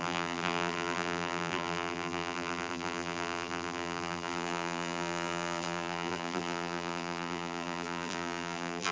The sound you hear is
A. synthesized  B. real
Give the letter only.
A